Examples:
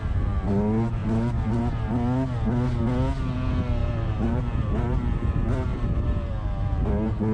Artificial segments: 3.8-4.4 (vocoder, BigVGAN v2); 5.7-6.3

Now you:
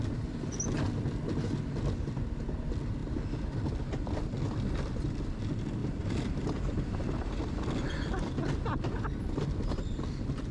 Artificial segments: 5.8-7.6 (vocoder, BigVGAN v2)

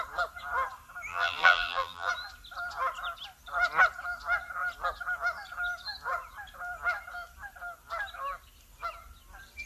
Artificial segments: 1.1-2.1 (vocoder, BigVGAN v2)

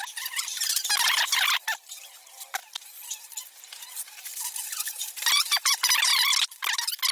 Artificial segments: 0.0-1.3 (vocoder, BigVGAN v2); 1.9-4.3; 5.3-6.1

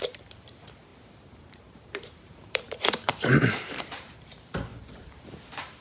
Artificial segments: 0.0-5.8 (vocoder, BigVGAN v2)

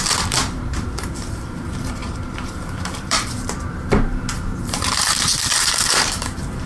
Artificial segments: 0.0-6.7 (vocoder, BigVGAN v2)

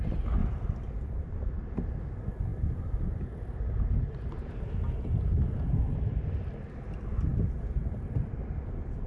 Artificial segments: 0.4-1.7 (vocoder, BigVGAN v2); 2.5-3.3; 7.3-9.1

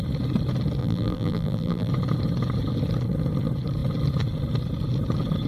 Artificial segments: 0.8-1.9 (vocoder, BigVGAN v2)